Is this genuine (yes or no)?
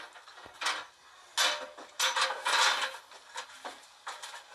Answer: yes